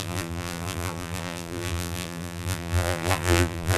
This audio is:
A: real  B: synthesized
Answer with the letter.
B